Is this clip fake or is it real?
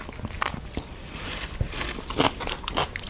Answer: real